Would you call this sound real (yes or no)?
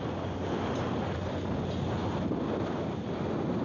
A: yes